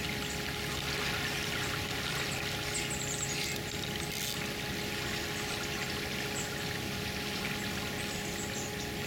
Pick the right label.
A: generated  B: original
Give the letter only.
B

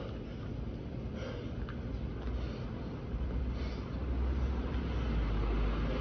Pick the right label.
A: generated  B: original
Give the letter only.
B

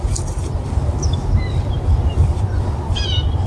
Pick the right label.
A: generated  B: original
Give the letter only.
B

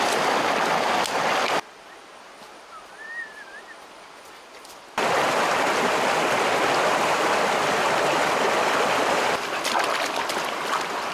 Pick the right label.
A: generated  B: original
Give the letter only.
B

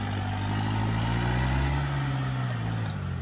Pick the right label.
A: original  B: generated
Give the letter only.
A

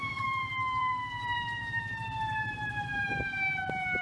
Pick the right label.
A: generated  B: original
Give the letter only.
A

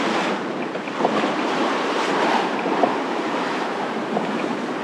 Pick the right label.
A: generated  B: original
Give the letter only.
A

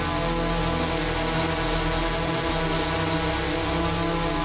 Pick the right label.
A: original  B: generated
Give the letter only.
A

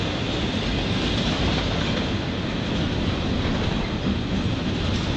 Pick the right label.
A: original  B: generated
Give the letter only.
A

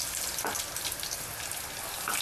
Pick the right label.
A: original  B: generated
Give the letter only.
A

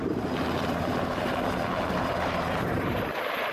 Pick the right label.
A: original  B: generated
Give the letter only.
B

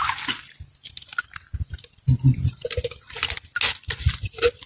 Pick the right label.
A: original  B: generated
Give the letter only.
A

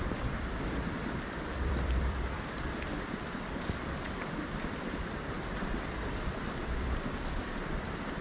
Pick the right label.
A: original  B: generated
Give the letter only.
B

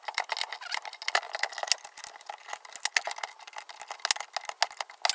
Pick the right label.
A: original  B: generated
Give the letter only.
A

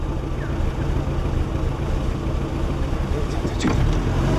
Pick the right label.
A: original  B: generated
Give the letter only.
A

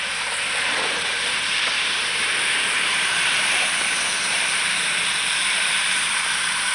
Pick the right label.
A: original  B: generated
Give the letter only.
B